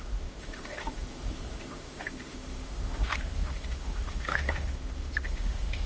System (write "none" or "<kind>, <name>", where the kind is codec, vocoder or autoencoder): autoencoder, DAC-VAE